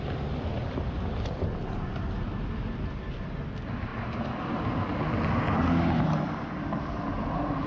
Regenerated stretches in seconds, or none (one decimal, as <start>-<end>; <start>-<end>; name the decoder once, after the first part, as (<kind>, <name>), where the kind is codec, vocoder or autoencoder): none